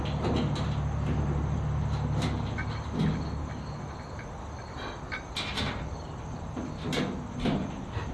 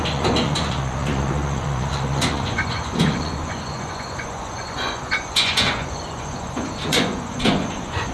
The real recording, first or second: first